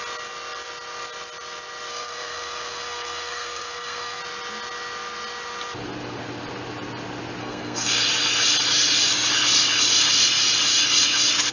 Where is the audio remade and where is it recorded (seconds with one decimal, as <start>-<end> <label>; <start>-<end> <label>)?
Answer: 0.0-1.9 recorded; 1.9-4.2 remade; 4.2-7.4 recorded; 7.4-8.0 remade; 8.0-11.5 recorded